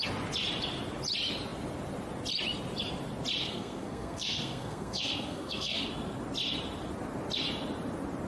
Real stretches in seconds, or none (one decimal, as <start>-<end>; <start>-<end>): 0.0-3.4; 5.9-8.3

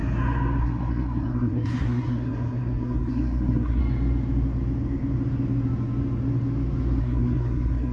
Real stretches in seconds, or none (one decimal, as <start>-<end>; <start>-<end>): 0.0-0.6; 3.8-7.0